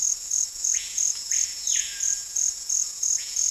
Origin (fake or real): fake